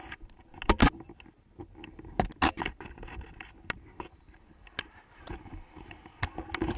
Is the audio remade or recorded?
recorded